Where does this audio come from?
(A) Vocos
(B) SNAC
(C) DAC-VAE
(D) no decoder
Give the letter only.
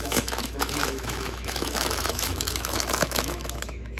C